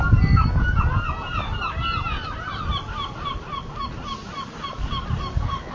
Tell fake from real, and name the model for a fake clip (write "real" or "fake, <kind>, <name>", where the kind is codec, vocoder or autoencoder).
real